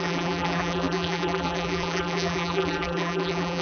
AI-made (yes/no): yes